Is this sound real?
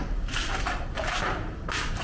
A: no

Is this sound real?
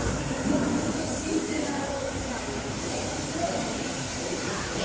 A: no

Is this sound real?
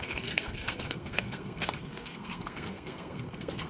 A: no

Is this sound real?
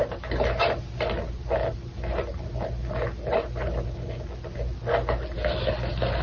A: yes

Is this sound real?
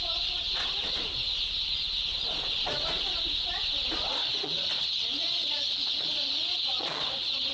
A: no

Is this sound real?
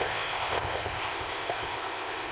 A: no